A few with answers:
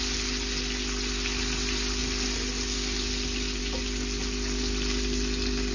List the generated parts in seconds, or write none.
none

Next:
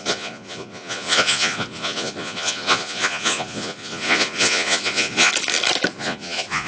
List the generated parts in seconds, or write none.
0.0-5.3 (vocoder, Vocos); 5.9-6.7

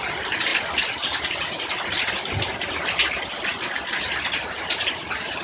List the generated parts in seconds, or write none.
none

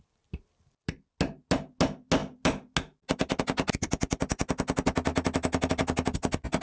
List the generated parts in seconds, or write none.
none

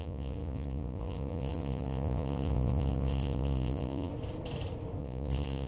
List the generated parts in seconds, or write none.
0.0-4.1 (vocoder, Vocos); 5.0-5.7

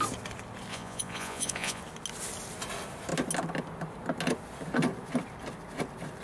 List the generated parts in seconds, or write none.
0.7-1.8 (vocoder, Vocos)